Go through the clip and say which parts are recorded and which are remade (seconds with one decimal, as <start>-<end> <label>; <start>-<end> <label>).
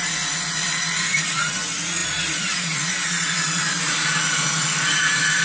0.0-5.4 remade